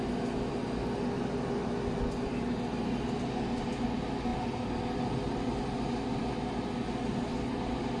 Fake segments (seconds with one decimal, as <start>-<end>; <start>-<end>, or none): none